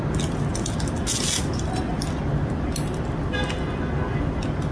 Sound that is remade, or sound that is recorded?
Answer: recorded